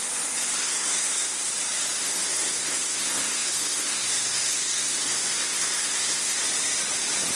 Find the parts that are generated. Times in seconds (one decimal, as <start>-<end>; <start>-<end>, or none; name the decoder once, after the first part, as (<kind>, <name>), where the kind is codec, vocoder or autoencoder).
0.6-1.5 (codec, SNAC); 2.0-6.4